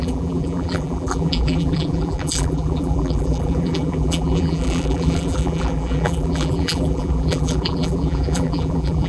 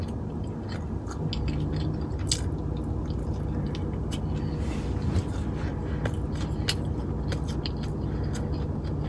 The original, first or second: second